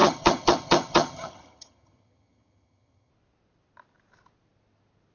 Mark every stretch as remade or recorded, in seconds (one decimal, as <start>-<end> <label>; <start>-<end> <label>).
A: 0.0-3.1 remade; 3.1-5.1 recorded